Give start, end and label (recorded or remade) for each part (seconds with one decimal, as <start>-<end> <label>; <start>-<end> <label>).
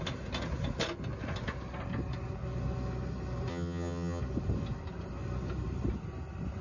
0.0-3.5 recorded; 3.5-4.2 remade; 4.2-6.6 recorded